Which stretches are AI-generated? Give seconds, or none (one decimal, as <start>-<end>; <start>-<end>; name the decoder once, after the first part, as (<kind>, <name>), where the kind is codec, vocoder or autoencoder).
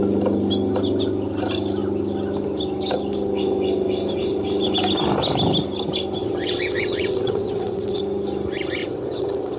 6.2-8.0 (vocoder, WaveNeXt); 8.8-9.6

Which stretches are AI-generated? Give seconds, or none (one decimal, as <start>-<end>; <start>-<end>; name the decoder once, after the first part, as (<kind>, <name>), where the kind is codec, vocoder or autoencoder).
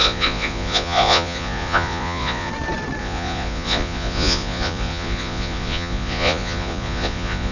0.0-2.5 (vocoder, Vocos); 3.0-7.5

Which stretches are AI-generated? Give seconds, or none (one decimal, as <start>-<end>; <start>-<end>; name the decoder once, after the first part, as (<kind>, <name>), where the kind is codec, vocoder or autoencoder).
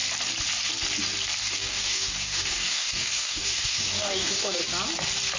1.4-4.6 (codec, DAC)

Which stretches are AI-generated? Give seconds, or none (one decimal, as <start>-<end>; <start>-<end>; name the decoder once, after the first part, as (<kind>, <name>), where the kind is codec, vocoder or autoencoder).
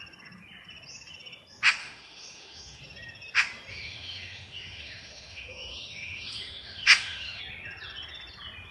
1.8-2.8 (autoencoder, DAC-VAE); 3.7-7.4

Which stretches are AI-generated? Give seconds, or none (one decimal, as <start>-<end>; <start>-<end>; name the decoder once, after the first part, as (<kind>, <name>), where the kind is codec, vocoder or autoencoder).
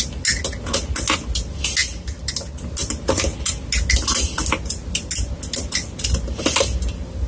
none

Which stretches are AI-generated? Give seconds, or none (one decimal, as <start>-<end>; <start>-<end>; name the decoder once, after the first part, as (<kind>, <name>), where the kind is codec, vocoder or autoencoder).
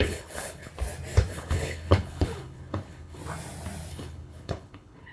0.0-0.7 (codec, HILCodec); 1.3-3.2; 3.9-5.1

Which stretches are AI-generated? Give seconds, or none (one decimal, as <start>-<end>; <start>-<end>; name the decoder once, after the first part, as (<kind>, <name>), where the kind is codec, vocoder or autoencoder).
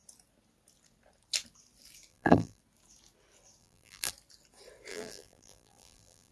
2.1-2.6 (vocoder, BigVGAN v2); 3.6-4.1; 4.9-6.3